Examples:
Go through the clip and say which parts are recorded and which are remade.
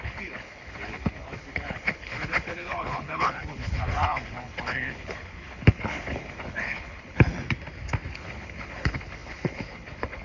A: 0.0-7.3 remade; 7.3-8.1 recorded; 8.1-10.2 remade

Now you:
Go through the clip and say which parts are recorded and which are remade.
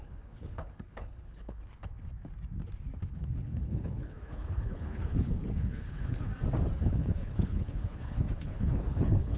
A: 0.0-2.1 remade; 2.1-3.0 recorded; 3.0-6.3 remade; 6.3-6.8 recorded; 6.8-9.4 remade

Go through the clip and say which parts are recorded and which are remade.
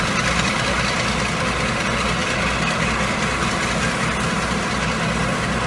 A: 0.0-5.7 recorded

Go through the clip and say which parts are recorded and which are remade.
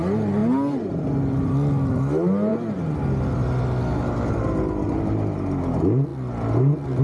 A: 0.0-7.0 recorded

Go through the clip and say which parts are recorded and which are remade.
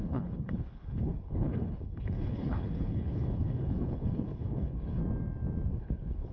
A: 0.0-5.0 remade; 5.0-5.7 recorded; 5.7-6.3 remade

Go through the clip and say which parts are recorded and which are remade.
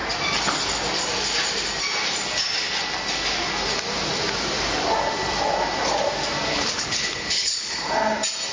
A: 0.0-6.5 recorded; 6.5-7.9 remade; 7.9-8.5 recorded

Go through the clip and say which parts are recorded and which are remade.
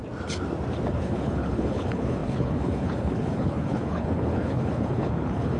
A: 0.0-0.9 recorded; 0.9-5.6 remade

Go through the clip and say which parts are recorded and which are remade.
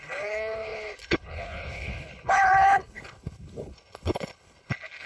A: 0.0-5.1 remade